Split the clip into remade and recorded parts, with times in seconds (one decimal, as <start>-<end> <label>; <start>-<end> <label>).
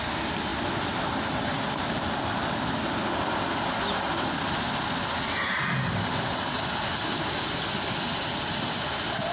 0.0-9.3 recorded